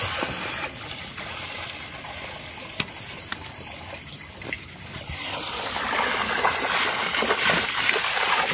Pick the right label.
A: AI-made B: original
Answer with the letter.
B